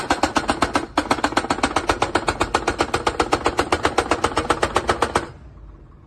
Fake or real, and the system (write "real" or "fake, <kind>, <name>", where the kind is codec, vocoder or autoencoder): real